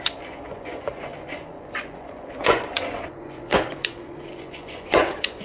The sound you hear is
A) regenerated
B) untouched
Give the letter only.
A